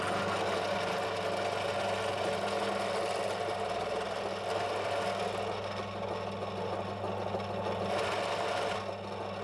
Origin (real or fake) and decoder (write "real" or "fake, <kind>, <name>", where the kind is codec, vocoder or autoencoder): real